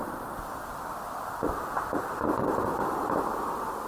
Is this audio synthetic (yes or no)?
yes